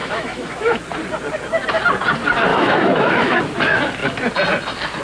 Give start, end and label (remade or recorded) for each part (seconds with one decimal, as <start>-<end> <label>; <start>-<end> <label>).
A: 0.0-0.8 remade; 0.8-2.5 recorded; 2.5-3.4 remade; 3.4-5.0 recorded